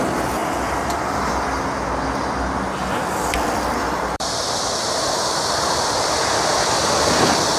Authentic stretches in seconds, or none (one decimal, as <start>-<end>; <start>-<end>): 0.4-3.0